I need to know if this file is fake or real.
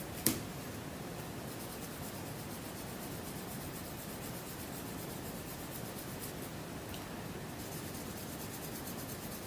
real